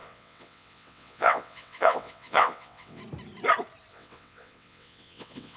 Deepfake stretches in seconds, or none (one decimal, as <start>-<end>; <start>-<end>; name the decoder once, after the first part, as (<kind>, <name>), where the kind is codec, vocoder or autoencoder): 0.0-3.0 (vocoder, WaveNeXt); 3.9-5.6